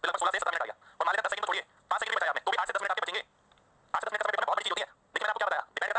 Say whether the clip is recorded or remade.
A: recorded